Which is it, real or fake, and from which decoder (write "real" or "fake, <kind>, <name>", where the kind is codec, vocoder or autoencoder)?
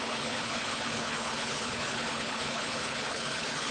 fake, codec, HILCodec